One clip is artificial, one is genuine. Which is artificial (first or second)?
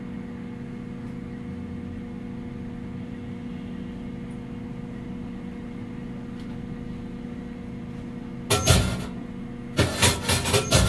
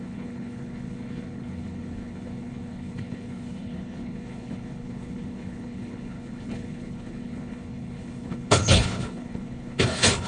second